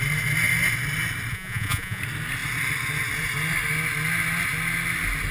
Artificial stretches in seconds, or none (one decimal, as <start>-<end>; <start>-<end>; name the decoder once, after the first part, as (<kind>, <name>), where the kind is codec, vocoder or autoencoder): 1.3-2.0 (vocoder, Vocos)